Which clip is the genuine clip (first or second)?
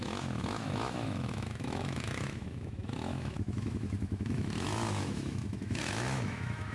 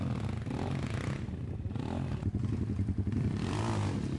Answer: second